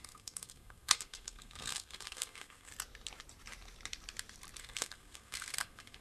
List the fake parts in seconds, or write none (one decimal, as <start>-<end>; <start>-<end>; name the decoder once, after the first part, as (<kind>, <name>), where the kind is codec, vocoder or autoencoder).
0.0-2.7 (codec, SNAC); 4.6-6.0